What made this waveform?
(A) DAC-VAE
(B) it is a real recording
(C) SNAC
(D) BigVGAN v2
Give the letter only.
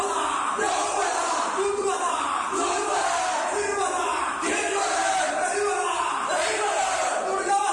D